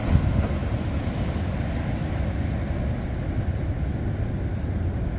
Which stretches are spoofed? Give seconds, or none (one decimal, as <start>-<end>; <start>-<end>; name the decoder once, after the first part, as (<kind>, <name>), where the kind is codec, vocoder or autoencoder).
none